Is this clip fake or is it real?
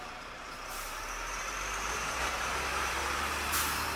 fake